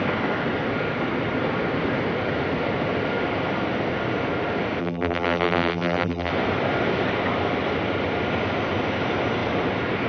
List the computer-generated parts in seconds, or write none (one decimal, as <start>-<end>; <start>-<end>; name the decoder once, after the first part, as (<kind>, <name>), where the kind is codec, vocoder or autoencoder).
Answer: 4.8-6.3 (vocoder, BigVGAN v2)